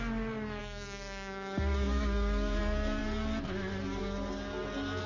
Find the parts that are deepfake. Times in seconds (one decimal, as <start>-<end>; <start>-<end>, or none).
0.6-2.6